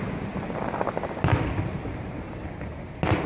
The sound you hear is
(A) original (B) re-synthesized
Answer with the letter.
A